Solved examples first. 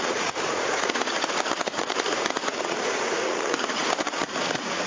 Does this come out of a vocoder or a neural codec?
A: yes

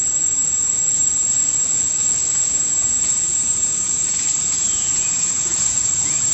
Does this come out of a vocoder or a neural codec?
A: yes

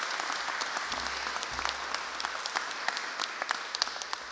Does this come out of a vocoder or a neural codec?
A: no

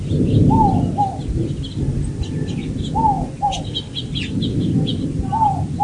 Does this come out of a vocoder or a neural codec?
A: no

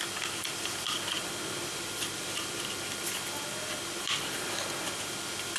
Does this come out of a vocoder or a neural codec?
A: no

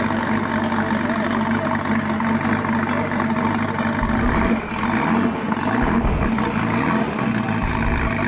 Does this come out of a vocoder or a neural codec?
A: no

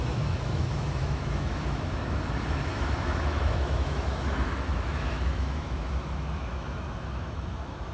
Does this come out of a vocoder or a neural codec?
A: yes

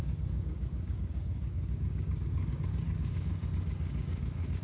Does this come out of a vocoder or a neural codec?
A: yes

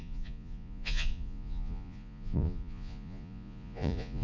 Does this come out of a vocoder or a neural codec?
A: yes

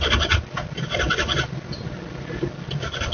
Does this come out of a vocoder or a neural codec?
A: no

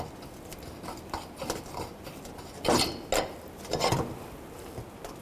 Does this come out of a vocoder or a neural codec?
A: no